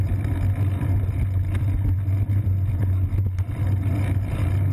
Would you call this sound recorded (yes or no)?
yes